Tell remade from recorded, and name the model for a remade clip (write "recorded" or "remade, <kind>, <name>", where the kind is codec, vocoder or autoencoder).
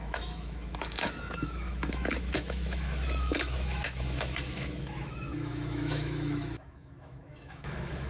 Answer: remade, autoencoder, DAC-VAE